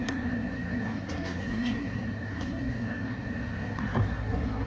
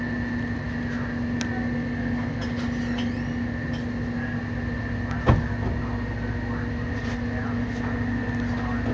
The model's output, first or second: first